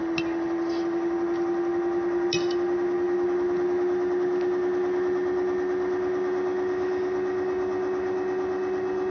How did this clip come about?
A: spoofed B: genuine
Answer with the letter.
B